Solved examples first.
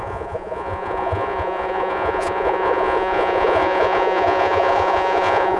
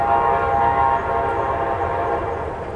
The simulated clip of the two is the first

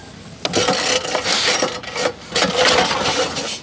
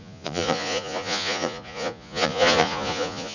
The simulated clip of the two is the second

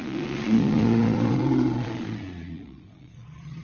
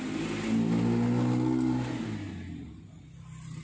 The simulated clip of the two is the first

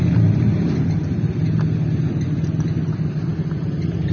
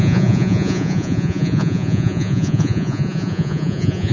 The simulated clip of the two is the second